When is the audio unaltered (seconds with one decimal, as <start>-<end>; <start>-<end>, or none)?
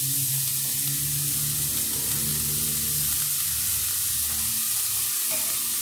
0.0-5.8